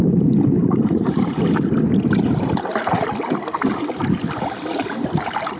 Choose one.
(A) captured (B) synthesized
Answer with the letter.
A